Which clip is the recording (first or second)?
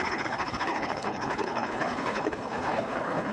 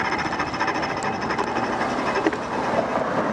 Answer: second